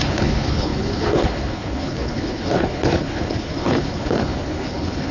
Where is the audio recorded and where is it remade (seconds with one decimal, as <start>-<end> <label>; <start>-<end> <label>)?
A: 0.0-5.1 remade